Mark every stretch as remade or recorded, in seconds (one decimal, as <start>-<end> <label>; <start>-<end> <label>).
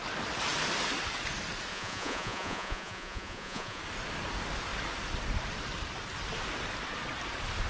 0.0-1.7 recorded; 1.7-3.8 remade; 3.8-7.7 recorded